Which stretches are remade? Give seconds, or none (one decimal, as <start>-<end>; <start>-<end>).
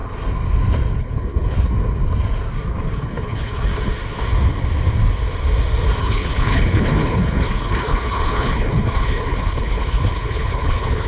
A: 1.0-1.7; 2.9-3.7; 6.0-11.1